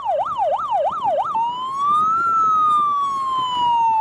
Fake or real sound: real